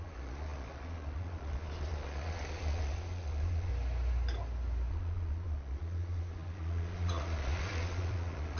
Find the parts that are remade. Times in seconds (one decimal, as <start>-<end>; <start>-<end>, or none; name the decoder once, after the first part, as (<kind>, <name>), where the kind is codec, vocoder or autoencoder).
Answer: 0.0-3.7 (vocoder, Vocos); 4.9-8.6